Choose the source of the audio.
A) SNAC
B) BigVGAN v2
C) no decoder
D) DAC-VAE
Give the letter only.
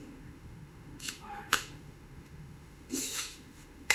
D